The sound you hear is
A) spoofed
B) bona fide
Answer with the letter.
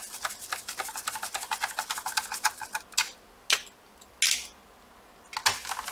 B